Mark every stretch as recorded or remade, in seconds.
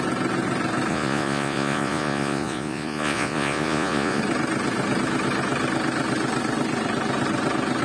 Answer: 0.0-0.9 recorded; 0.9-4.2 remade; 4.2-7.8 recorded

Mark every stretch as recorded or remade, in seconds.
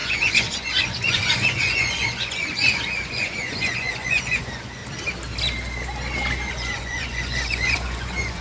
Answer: 0.0-4.8 remade; 4.8-6.5 recorded; 6.5-8.4 remade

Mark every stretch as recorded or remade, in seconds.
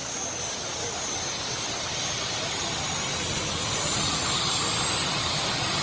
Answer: 0.0-3.1 recorded; 3.1-4.2 remade; 4.2-5.8 recorded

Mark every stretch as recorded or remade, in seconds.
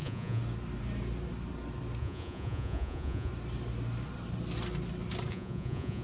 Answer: 0.0-0.4 remade; 0.4-2.0 recorded; 2.0-3.3 remade; 3.3-5.3 recorded; 5.3-6.0 remade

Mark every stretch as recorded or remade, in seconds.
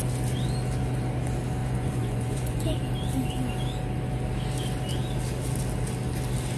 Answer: 0.0-1.6 recorded; 1.6-2.8 remade; 2.8-6.6 recorded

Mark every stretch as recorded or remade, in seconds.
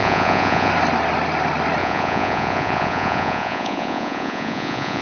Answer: 0.0-0.7 remade; 0.7-1.8 recorded; 1.8-5.0 remade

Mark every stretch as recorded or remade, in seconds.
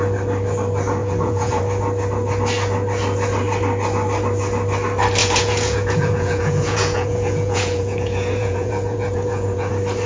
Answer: 0.0-1.0 recorded; 1.0-1.6 remade; 1.6-5.2 recorded; 5.2-9.7 remade; 9.7-10.1 recorded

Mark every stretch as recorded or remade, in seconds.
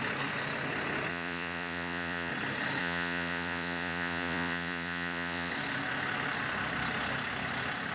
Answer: 0.0-1.1 recorded; 1.1-2.3 remade; 2.3-2.8 recorded; 2.8-5.5 remade; 5.5-7.9 recorded